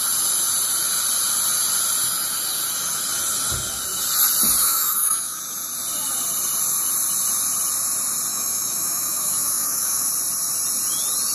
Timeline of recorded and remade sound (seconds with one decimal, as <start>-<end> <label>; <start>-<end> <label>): 0.0-4.6 recorded; 4.6-5.4 remade; 5.4-8.3 recorded; 8.3-10.1 remade; 10.1-11.3 recorded